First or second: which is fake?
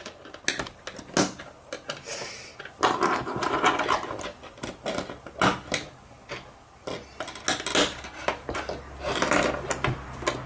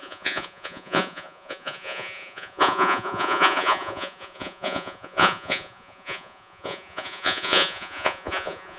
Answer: second